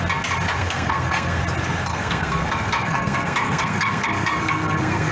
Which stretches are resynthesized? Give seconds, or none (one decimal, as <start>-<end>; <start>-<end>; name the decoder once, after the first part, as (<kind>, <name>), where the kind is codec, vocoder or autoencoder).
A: 0.6-1.4 (codec, SNAC); 1.9-5.1